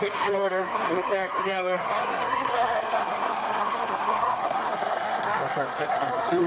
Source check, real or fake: fake